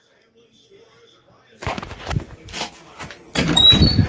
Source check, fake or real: real